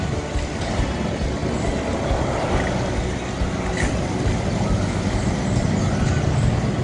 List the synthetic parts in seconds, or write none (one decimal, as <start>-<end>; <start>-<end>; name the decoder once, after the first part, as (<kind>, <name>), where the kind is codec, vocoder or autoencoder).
none